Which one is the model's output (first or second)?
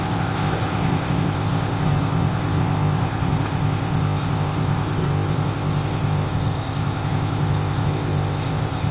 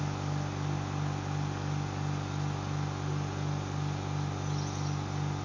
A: first